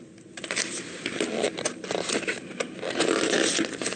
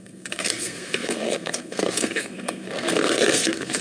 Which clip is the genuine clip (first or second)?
first